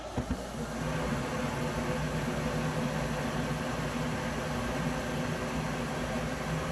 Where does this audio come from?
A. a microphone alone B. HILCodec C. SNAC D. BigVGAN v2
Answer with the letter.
A